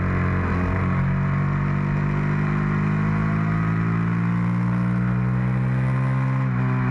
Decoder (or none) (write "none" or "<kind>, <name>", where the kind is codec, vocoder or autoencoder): none